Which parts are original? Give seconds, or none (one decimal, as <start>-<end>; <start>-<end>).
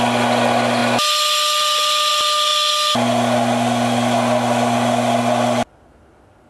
0.0-6.5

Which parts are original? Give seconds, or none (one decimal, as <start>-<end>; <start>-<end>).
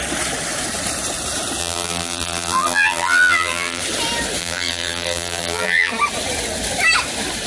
0.0-1.6; 3.8-4.4; 5.9-7.5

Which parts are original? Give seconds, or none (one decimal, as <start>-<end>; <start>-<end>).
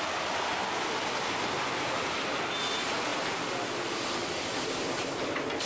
0.0-5.7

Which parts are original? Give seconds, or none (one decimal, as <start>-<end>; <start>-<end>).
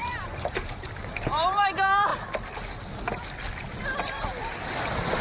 2.1-5.2